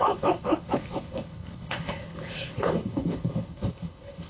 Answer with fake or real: fake